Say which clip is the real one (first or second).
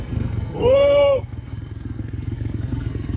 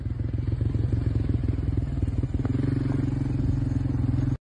second